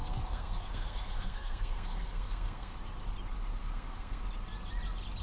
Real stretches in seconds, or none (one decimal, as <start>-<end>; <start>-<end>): 2.7-3.6; 4.2-5.2